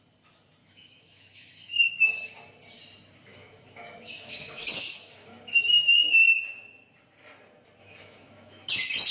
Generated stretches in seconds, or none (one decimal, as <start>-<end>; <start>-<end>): 0.6-1.9; 3.3-6.4; 7.8-8.7